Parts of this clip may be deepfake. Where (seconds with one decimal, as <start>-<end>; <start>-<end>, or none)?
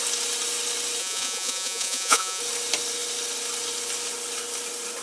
1.0-2.4